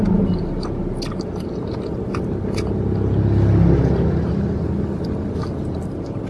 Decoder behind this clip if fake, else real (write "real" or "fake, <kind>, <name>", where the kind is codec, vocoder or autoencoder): real